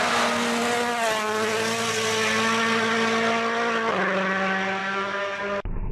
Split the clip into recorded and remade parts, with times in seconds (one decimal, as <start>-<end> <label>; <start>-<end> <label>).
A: 0.0-4.8 recorded; 4.8-5.4 remade; 5.4-5.9 recorded